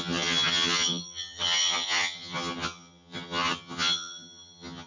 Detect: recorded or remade remade